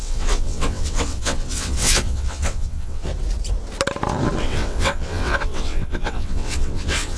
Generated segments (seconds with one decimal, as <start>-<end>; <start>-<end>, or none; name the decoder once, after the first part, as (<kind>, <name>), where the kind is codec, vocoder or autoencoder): 0.0-3.1 (vocoder, WaveNeXt); 4.4-7.2